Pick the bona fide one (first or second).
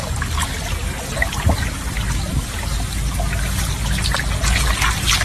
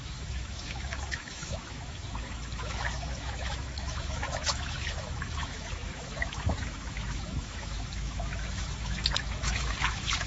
first